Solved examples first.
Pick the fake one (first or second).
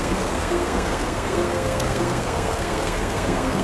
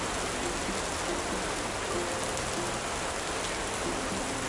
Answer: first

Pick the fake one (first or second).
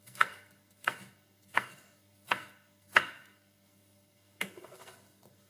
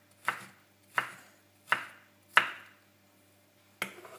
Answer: first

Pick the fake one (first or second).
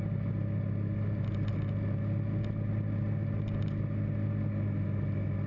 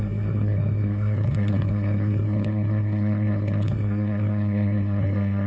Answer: second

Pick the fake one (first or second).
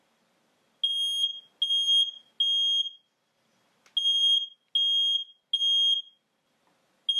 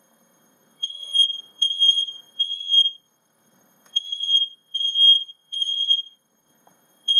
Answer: second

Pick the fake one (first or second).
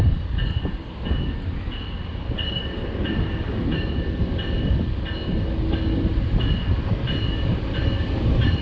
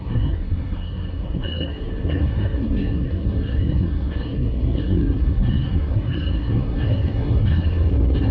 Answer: second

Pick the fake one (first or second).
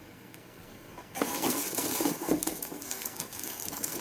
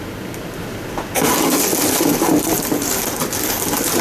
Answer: first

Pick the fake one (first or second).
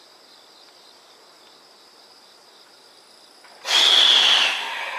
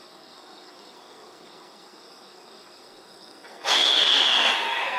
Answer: second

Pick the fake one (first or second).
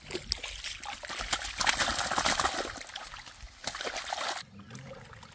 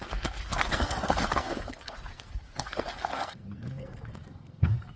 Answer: second